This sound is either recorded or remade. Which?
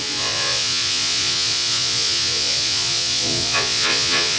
remade